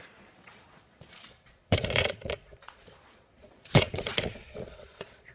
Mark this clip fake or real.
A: fake